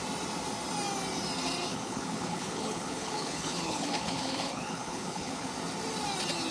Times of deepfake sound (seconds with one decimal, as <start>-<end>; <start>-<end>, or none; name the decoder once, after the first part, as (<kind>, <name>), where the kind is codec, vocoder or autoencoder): 1.7-5.5 (codec, HILCodec)